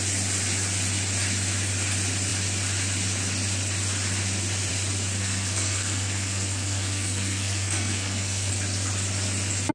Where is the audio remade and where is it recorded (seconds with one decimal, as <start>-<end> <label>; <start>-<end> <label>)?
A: 0.0-5.2 recorded; 5.2-8.5 remade; 8.5-9.7 recorded